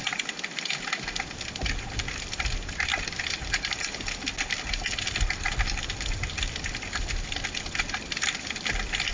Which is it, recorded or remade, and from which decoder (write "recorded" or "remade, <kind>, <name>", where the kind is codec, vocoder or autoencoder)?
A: recorded